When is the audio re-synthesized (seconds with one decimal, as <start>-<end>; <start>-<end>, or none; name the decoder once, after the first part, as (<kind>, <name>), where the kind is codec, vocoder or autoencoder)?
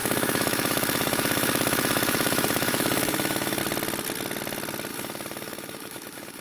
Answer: 0.0-3.6 (autoencoder, DAC-VAE); 4.9-6.4